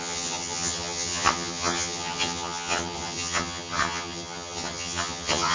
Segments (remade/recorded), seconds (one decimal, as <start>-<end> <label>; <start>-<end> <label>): 0.0-5.5 remade